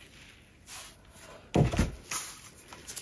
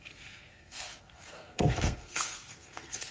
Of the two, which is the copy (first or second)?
second